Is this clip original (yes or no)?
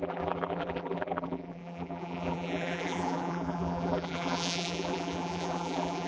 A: no